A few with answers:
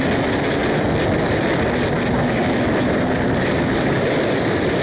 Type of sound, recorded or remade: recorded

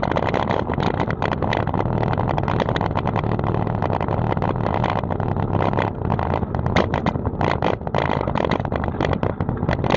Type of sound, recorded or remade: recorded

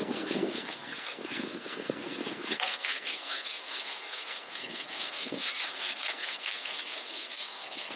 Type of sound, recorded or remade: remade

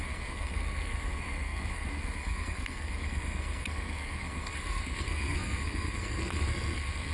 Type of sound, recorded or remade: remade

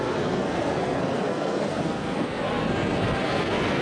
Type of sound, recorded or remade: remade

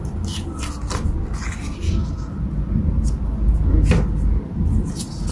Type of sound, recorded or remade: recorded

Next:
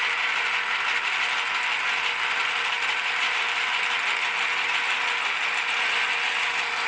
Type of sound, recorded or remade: recorded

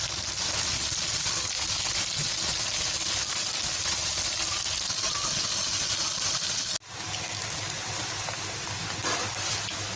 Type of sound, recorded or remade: recorded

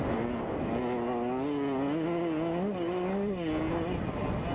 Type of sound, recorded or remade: recorded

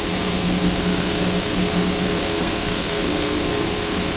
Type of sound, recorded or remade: remade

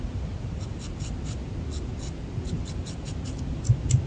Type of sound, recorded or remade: recorded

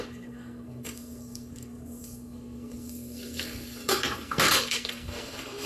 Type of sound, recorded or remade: remade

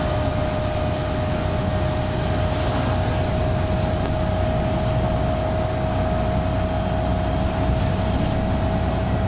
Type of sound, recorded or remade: recorded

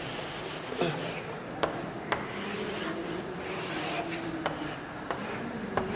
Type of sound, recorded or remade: recorded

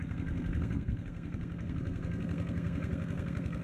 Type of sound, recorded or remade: remade